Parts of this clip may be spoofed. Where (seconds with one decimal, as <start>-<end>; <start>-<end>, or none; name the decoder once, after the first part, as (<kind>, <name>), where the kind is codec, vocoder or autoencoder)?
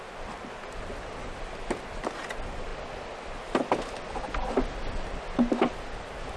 none